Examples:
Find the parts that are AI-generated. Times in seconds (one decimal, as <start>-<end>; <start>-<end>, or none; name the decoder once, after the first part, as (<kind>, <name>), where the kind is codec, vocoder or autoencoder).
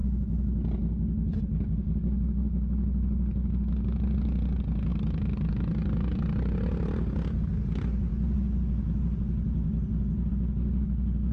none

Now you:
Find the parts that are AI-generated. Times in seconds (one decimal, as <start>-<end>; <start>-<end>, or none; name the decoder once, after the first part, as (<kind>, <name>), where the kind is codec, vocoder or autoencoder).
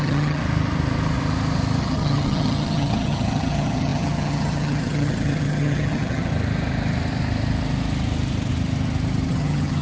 0.0-0.4 (vocoder, HiFi-GAN); 1.8-6.3; 9.3-9.8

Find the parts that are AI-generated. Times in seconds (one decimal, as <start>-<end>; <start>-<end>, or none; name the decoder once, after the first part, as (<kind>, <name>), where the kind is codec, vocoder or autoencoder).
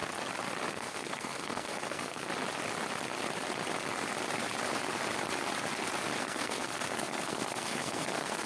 0.7-2.3 (codec, SNAC); 6.2-8.5